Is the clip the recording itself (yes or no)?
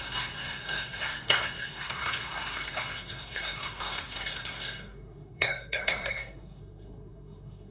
no